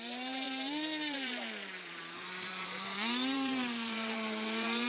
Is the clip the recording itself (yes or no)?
no